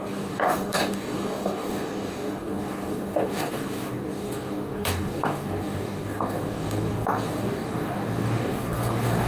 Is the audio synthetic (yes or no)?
yes